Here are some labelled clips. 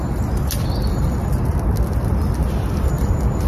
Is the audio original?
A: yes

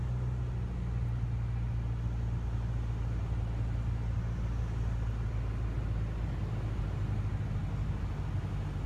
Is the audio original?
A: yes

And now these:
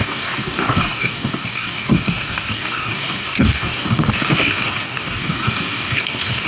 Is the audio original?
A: no